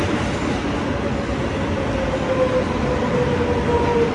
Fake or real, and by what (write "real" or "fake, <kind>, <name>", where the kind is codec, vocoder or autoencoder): real